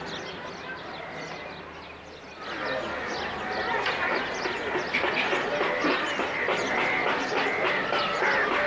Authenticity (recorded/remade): recorded